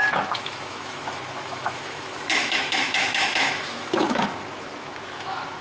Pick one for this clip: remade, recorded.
remade